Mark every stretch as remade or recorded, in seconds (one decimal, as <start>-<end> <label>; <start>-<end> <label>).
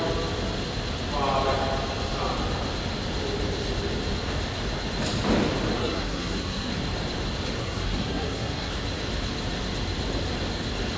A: 0.0-5.8 recorded; 5.8-6.7 remade; 6.7-7.6 recorded; 7.6-8.7 remade; 8.7-11.0 recorded